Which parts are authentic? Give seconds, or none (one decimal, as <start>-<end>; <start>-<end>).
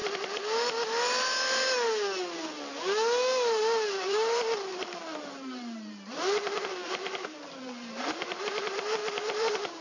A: 0.0-3.9